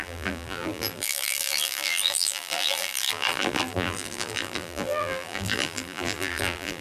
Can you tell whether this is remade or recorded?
remade